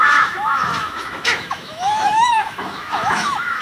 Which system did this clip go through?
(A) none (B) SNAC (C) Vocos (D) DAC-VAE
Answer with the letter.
D